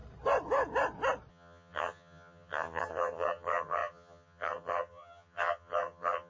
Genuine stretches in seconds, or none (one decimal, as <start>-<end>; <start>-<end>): 0.0-1.3